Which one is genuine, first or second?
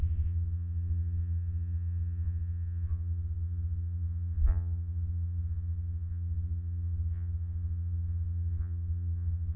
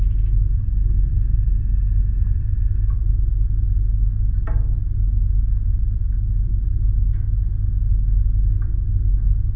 second